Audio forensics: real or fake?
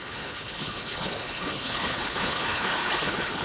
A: fake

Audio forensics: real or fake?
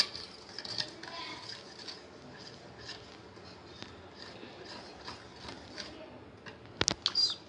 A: real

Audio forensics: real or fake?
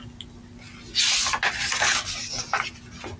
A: real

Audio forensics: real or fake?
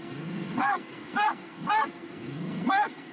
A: fake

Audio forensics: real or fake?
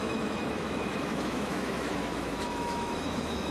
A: fake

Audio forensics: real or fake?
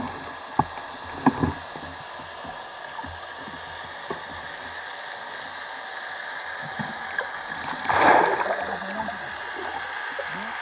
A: real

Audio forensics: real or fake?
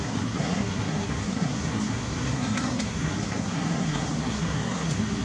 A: fake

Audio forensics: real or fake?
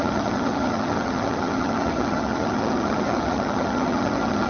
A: fake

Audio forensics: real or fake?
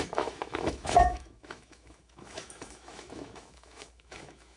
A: fake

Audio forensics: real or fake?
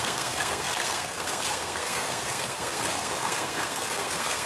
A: fake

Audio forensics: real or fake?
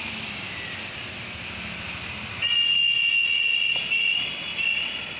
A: real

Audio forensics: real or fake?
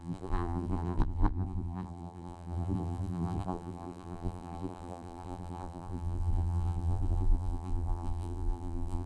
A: fake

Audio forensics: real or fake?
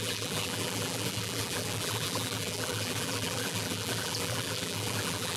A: fake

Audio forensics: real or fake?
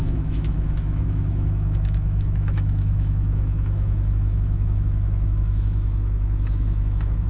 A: fake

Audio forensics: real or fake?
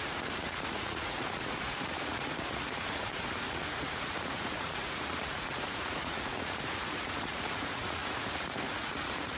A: fake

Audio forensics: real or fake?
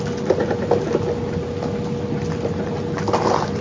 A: real